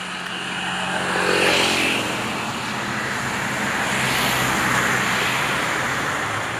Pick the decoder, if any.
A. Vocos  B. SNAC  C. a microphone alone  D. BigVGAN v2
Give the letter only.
C